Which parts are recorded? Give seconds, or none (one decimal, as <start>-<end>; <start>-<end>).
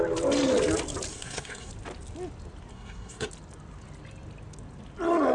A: 0.0-1.1; 1.7-2.7; 3.3-5.3